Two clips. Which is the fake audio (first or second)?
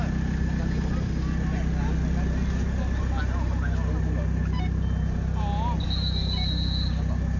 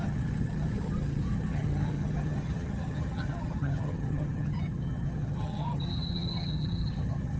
second